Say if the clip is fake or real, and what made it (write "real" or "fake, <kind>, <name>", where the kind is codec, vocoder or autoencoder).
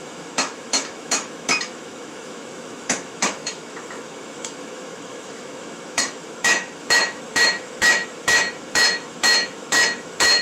fake, autoencoder, DAC-VAE